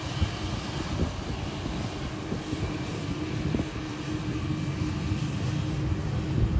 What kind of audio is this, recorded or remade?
recorded